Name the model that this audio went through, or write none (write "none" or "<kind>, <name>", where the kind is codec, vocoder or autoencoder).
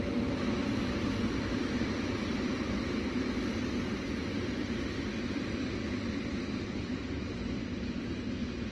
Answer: none